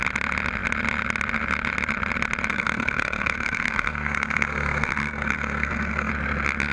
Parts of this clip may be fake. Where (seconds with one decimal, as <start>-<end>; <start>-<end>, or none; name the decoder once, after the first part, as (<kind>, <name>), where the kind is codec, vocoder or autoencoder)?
2.5-6.1 (codec, SNAC)